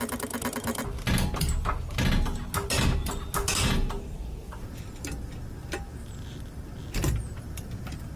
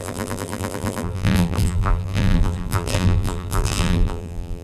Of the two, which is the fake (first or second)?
second